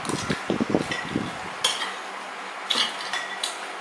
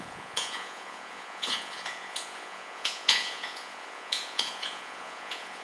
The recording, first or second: first